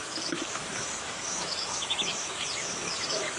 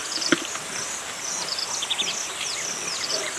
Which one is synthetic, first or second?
first